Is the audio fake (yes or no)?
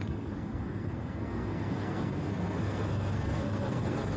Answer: yes